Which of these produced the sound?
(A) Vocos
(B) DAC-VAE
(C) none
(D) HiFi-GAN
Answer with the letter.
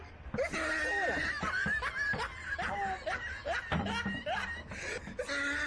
C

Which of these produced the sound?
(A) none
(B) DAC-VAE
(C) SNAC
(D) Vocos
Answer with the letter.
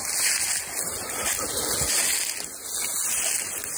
A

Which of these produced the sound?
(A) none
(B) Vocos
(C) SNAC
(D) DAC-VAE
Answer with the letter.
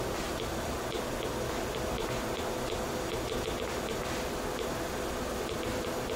A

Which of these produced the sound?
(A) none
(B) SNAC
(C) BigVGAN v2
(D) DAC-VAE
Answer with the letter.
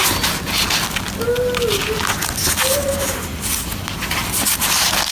A